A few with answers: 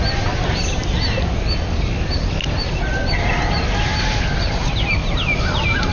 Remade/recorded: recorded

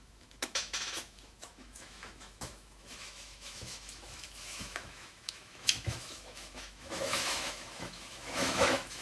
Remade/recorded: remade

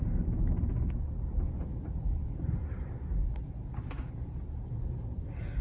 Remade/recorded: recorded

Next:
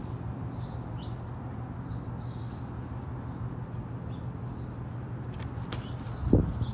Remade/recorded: recorded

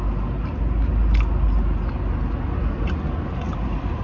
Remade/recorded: recorded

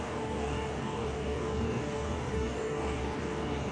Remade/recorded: remade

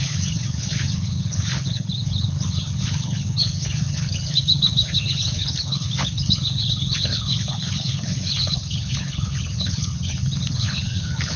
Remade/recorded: remade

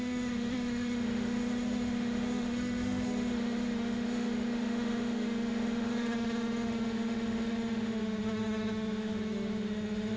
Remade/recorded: remade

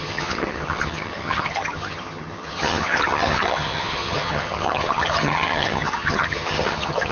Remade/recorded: remade